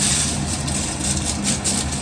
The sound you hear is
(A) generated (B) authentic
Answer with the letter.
A